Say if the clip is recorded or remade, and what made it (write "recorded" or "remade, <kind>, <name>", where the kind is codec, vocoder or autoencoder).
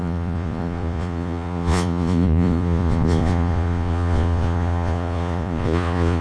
remade, vocoder, Vocos